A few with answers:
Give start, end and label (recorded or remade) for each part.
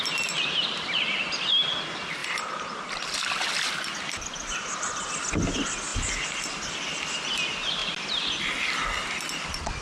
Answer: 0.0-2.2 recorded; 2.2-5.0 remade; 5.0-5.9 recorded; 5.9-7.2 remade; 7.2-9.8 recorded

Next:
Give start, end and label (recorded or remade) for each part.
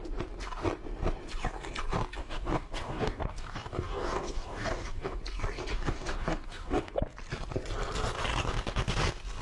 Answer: 0.0-2.2 recorded; 2.2-5.2 remade; 5.2-5.7 recorded; 5.7-6.9 remade; 6.9-8.4 recorded; 8.4-8.9 remade; 8.9-9.4 recorded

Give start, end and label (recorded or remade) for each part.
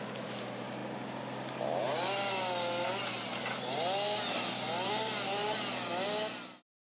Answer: 0.0-6.9 recorded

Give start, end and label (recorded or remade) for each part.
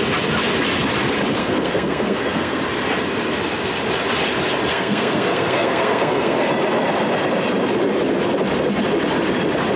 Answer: 0.0-1.4 recorded; 1.4-2.6 remade; 2.6-4.7 recorded; 4.7-6.5 remade; 6.5-9.8 recorded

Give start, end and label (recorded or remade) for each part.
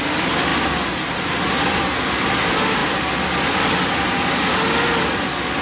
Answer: 0.0-5.6 recorded